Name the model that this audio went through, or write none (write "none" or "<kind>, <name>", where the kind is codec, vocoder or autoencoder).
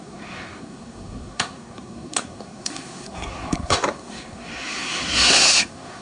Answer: codec, SNAC